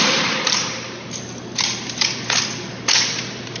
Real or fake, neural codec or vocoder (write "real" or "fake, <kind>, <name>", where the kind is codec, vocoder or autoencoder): real